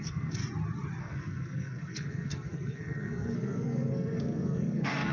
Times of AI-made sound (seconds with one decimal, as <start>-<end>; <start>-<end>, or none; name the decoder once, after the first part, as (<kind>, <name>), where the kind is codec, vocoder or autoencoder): 0.0-0.4 (codec, SNAC); 1.0-5.1